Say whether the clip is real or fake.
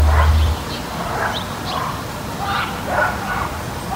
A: real